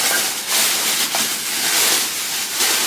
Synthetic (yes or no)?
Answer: no